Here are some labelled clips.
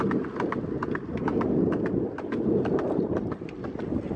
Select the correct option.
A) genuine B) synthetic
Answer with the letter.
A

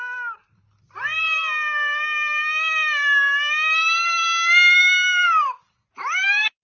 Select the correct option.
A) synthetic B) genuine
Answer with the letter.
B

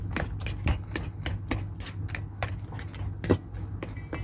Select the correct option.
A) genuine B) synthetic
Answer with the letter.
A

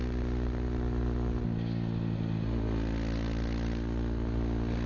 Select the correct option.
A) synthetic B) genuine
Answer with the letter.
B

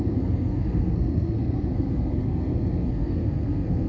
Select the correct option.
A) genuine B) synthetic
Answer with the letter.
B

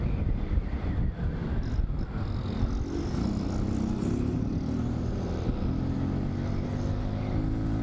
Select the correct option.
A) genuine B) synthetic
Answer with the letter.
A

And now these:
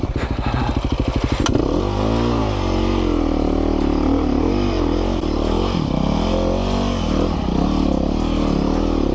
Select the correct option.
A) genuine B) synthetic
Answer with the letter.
A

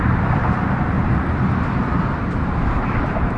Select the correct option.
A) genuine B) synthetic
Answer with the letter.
B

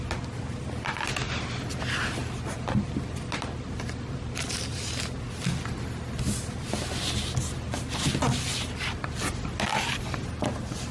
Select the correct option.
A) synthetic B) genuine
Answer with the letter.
B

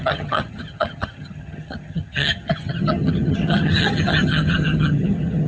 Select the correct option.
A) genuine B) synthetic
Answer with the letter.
B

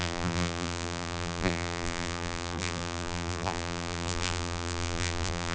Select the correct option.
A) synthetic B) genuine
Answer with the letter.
A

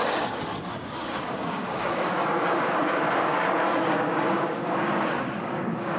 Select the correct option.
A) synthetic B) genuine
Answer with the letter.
A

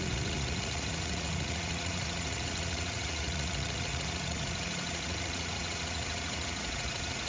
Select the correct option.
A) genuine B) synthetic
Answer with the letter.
B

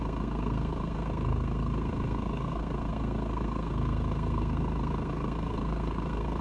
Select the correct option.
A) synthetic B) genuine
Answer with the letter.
A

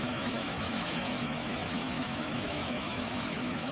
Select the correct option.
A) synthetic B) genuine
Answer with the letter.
A